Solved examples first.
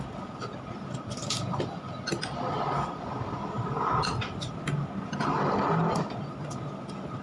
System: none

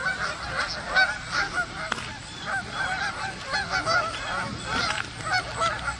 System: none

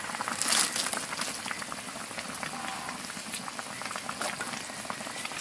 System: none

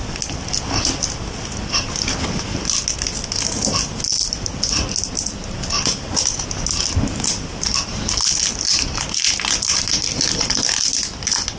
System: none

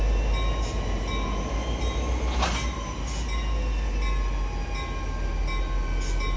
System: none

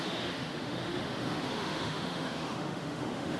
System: autoencoder, DAC-VAE